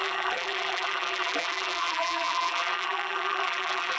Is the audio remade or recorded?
remade